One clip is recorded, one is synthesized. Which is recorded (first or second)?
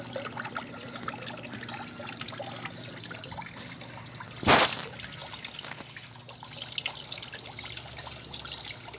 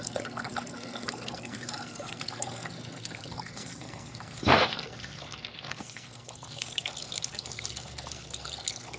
first